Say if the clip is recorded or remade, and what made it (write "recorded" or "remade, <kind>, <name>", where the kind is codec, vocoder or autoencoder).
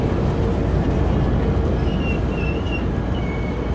recorded